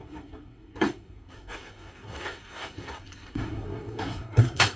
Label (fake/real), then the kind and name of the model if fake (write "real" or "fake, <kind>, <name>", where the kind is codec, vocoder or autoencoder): fake, codec, SNAC